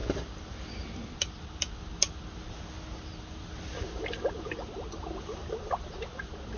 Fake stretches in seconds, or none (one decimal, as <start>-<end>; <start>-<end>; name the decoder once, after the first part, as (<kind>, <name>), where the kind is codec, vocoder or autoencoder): none